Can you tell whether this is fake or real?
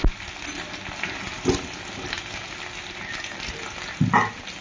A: real